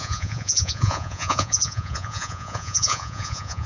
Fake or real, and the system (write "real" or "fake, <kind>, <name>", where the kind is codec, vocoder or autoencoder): fake, vocoder, Vocos